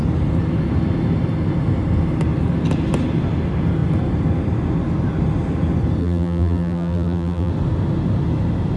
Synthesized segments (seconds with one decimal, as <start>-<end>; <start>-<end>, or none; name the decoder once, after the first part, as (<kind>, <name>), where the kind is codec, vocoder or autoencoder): 6.0-7.5 (vocoder, BigVGAN v2)